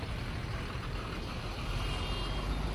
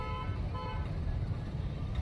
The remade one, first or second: second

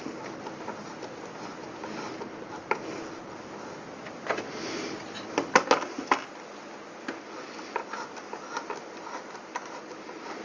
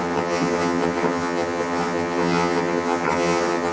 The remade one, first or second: second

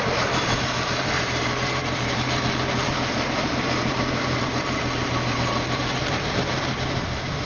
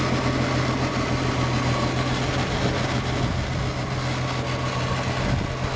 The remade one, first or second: first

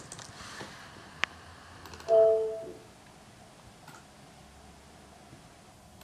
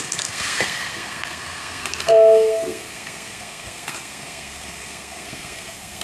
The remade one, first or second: second